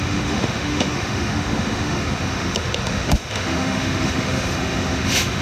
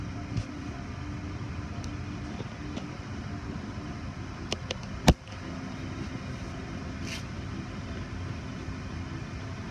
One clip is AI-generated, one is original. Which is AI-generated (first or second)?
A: first